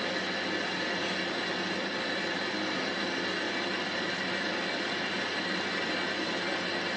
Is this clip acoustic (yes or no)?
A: yes